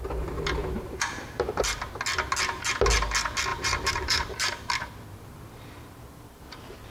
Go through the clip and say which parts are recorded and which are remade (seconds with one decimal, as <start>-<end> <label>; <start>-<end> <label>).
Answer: 0.0-0.6 recorded; 0.6-1.9 remade; 1.9-3.5 recorded; 3.5-4.7 remade; 4.7-6.9 recorded